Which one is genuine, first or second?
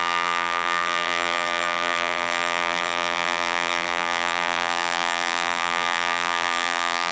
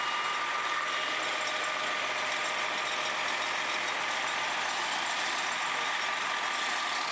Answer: second